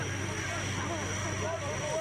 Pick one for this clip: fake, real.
real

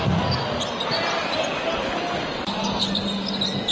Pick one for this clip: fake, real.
real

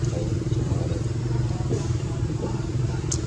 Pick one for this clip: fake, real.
fake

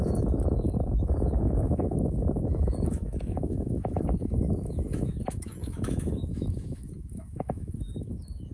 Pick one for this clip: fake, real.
fake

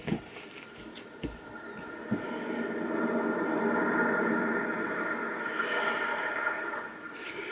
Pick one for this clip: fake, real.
real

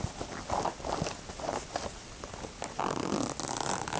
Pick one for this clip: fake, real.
real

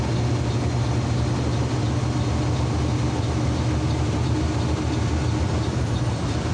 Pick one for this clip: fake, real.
real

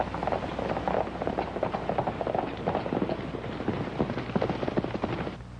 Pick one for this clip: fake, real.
real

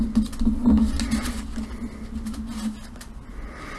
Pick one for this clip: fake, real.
real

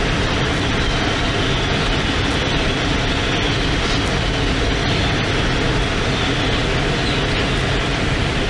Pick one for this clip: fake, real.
real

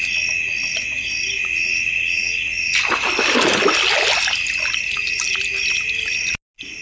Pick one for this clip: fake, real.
real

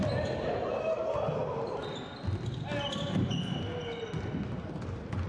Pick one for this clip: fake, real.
real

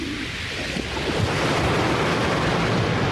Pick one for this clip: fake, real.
real